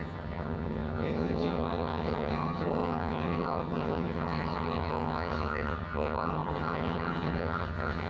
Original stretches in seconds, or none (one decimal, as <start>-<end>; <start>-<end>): none